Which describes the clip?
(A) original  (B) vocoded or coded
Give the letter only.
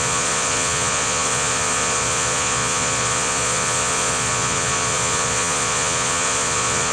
B